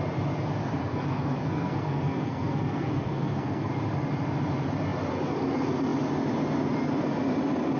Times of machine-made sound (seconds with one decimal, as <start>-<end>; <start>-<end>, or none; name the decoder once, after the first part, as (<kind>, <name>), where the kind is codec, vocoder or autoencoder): 0.8-3.7 (codec, SNAC)